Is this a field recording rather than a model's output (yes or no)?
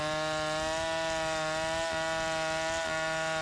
yes